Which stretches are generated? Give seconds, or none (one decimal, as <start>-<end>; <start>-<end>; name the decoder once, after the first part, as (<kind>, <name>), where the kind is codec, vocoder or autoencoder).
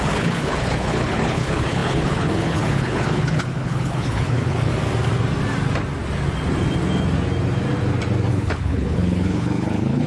0.0-4.7 (codec, HILCodec); 8.3-10.1